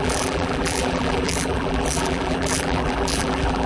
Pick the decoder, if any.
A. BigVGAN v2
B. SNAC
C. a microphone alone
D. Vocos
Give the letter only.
A